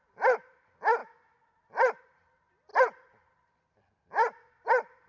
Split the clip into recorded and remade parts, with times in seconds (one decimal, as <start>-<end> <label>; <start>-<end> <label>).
0.0-5.1 recorded